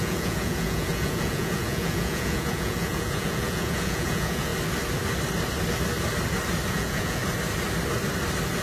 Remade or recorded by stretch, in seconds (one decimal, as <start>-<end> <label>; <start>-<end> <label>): 0.0-4.5 remade; 4.5-6.7 recorded; 6.7-7.2 remade; 7.2-8.6 recorded